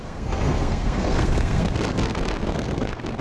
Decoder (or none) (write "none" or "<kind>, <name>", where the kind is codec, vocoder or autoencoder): codec, SNAC